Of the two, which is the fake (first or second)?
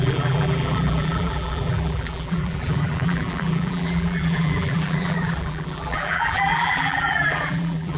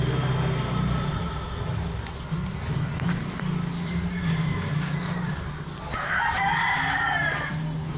first